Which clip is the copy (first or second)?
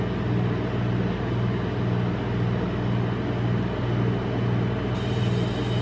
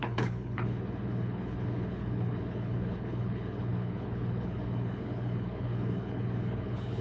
second